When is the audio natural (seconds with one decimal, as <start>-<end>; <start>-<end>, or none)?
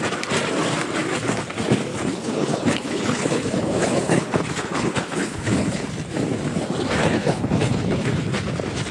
0.0-1.9; 5.9-7.0; 8.3-8.9